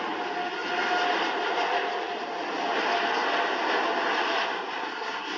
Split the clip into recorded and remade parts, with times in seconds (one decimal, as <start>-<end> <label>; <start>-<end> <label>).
0.0-4.8 recorded; 4.8-5.4 remade